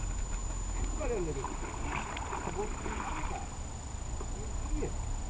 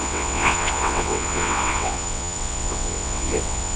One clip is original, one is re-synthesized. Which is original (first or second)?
first